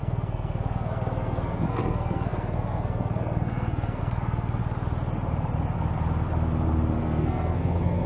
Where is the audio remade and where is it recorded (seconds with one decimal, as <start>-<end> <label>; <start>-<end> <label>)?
0.0-4.6 remade; 4.6-7.0 recorded; 7.0-8.1 remade